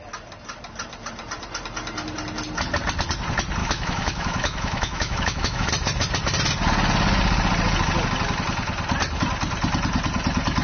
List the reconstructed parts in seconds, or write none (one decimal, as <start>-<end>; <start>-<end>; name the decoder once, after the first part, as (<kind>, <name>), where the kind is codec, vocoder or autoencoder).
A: 3.6-5.7 (autoencoder, DAC-VAE)

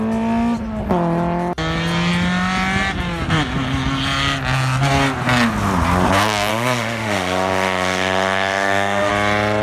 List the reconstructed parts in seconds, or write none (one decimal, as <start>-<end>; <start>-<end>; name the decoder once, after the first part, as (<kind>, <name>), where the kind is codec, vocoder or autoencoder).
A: 6.5-9.1 (autoencoder, DAC-VAE)

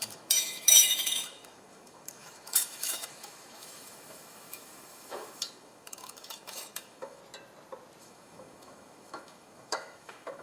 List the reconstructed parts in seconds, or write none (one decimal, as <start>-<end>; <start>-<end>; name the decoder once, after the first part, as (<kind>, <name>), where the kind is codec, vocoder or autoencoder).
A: 0.0-7.2 (autoencoder, DAC-VAE); 8.0-10.4

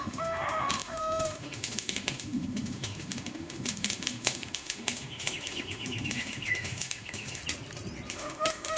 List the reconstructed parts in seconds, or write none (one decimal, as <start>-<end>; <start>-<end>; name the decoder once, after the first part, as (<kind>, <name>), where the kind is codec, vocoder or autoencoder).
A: 0.0-7.4 (autoencoder, DAC-VAE); 8.1-8.8

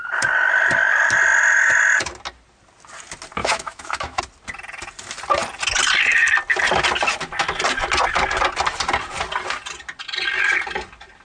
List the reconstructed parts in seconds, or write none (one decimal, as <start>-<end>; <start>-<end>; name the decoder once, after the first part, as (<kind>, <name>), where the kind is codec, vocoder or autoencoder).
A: 3.4-4.2 (autoencoder, DAC-VAE)

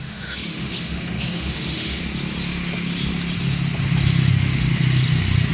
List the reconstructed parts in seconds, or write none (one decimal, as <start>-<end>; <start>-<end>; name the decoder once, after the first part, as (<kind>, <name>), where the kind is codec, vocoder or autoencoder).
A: 0.0-2.0 (autoencoder, DAC-VAE); 4.3-4.7

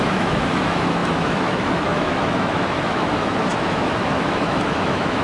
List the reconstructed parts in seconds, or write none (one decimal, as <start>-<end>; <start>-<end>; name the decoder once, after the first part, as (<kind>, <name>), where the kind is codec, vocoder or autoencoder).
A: 0.0-5.2 (autoencoder, DAC-VAE)

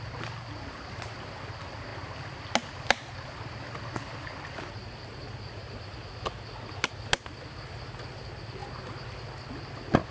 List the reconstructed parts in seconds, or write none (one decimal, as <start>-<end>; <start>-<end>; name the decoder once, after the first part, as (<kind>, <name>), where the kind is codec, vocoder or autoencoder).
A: none